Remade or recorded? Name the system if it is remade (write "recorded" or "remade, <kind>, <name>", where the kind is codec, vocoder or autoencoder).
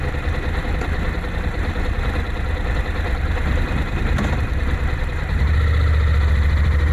recorded